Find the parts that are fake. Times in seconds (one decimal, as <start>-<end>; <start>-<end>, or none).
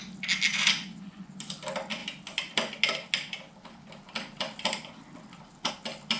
0.5-1.4